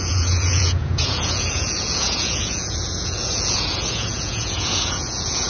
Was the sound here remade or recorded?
remade